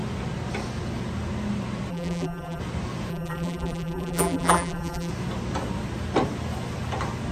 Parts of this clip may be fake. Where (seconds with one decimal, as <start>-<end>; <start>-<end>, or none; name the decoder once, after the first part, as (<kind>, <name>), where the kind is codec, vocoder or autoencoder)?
1.9-2.6 (vocoder, BigVGAN v2); 3.1-5.1